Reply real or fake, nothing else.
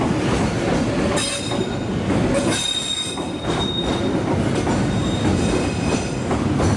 real